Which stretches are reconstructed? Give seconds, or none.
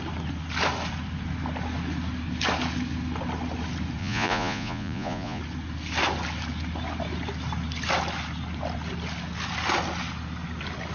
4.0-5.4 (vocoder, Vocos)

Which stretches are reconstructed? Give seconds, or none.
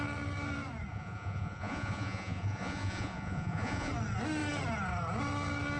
0.9-3.9 (vocoder, Vocos)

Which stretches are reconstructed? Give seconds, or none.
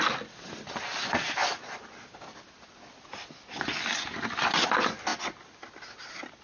none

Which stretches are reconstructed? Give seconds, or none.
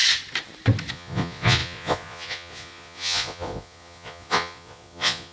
0.9-5.3 (vocoder, Vocos)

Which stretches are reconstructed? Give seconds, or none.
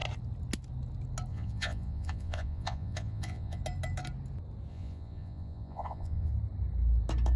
1.3-3.6 (vocoder, Vocos); 4.7-6.3